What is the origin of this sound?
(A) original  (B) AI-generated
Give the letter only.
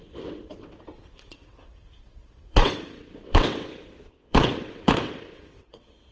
B